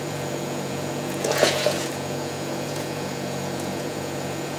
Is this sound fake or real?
fake